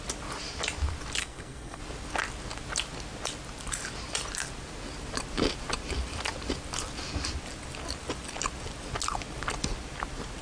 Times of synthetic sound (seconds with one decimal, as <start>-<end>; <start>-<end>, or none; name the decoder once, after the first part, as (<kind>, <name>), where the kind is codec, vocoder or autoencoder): 1.2-1.8 (codec, SNAC)